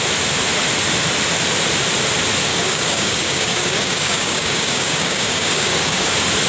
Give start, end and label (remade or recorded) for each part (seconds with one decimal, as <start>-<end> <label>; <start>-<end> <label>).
0.0-2.5 recorded; 2.5-6.1 remade; 6.1-6.5 recorded